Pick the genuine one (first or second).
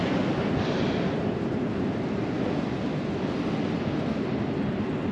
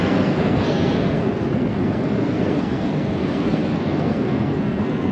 first